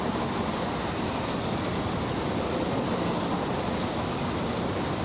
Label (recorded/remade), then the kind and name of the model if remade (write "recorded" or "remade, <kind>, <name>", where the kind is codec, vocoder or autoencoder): recorded